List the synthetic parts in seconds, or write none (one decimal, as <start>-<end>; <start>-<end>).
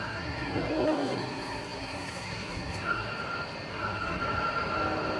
0.0-3.1; 3.7-4.2